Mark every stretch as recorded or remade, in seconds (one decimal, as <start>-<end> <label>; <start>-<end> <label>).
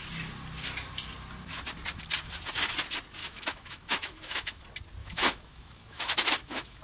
0.0-3.2 recorded; 3.2-4.6 remade; 4.6-5.0 recorded; 5.0-6.8 remade